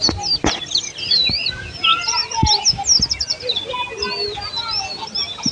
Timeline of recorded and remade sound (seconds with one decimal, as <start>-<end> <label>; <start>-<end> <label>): 0.0-5.5 recorded

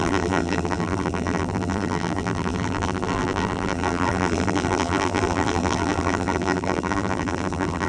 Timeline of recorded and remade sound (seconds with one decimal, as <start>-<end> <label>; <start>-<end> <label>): 0.0-7.9 remade